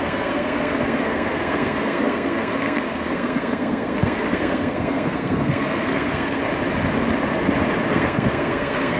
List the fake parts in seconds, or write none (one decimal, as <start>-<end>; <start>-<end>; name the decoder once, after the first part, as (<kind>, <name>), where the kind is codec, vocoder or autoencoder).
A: 0.0-6.4 (codec, SNAC); 7.9-9.0